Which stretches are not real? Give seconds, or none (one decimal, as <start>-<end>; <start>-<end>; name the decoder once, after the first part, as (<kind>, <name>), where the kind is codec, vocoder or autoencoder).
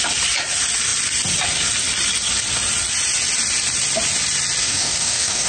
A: 4.6-5.5 (codec, DAC)